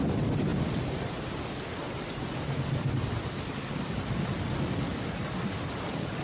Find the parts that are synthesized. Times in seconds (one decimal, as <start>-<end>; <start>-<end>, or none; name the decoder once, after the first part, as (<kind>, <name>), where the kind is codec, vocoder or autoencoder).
0.0-6.2 (vocoder, BigVGAN v2)